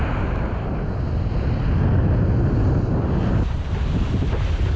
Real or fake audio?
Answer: real